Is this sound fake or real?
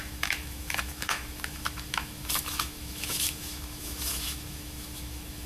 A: fake